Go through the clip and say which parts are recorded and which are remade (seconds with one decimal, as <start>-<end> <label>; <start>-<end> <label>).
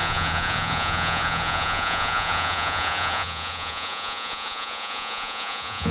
0.0-5.9 remade